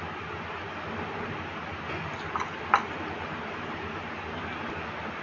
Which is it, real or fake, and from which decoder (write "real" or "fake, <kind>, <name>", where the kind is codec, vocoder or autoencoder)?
real